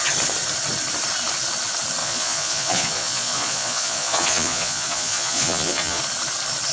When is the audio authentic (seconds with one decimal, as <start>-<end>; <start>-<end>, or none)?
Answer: 0.0-2.0; 6.0-6.7